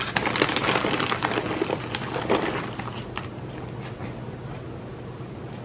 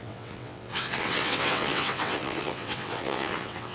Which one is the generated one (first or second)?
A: second